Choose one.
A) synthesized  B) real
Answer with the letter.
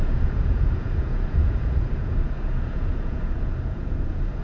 A